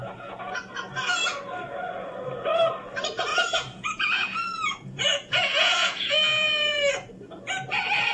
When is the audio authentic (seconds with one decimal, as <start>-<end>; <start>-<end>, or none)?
0.6-3.3; 6.9-8.1